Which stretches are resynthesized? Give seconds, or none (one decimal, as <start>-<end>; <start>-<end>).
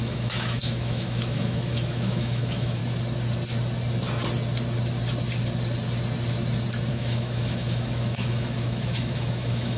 0.0-2.8; 6.9-9.8